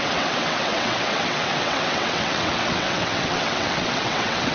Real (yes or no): no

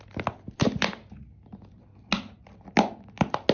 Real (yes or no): yes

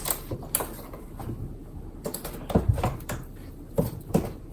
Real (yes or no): yes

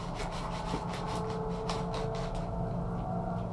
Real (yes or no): yes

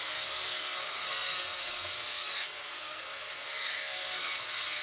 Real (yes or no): no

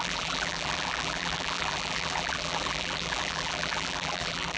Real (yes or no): no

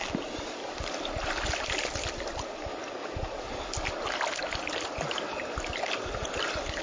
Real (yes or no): yes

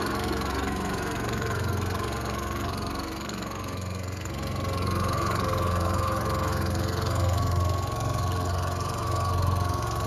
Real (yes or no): no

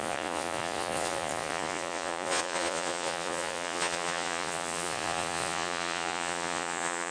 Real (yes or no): no